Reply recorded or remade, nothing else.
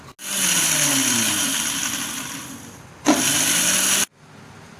recorded